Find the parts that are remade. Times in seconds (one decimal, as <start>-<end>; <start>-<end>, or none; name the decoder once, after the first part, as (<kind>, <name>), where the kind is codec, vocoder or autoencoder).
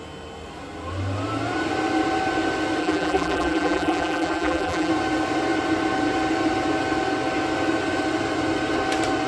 2.8-4.9 (vocoder, BigVGAN v2)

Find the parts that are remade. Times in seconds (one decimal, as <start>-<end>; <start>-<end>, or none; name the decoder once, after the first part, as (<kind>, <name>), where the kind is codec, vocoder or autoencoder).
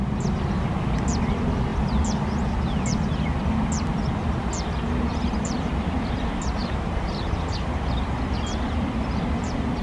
6.6-7.6 (vocoder, BigVGAN v2)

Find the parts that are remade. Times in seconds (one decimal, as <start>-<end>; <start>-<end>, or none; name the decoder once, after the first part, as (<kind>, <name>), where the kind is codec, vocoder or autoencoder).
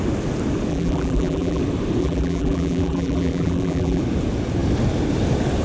0.7-1.6 (vocoder, BigVGAN v2); 2.0-4.0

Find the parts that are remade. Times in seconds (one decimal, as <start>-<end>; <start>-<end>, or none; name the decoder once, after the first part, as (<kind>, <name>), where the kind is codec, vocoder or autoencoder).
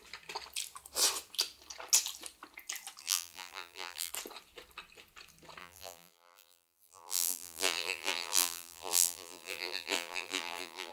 3.0-4.1 (vocoder, BigVGAN v2); 5.6-10.9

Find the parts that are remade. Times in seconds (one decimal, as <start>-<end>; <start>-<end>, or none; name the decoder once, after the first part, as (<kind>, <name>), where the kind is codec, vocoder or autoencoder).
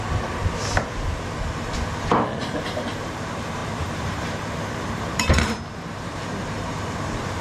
0.0-0.4 (vocoder, BigVGAN v2); 2.4-7.4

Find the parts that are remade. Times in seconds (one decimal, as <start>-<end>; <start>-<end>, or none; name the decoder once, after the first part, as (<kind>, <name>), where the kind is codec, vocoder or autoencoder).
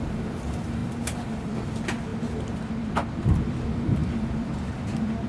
0.0-5.3 (vocoder, BigVGAN v2)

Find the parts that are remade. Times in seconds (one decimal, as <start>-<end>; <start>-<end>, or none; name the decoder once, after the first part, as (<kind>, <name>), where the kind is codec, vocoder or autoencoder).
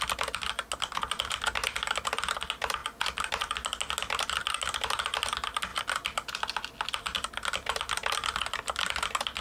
none